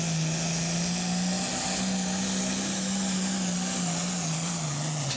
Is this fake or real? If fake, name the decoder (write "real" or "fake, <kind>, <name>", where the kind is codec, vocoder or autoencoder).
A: real